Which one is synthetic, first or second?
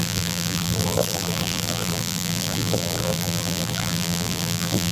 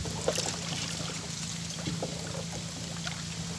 first